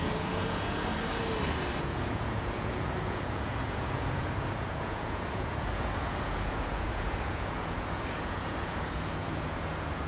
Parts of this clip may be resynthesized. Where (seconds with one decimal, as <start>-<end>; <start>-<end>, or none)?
0.0-0.9; 1.8-10.1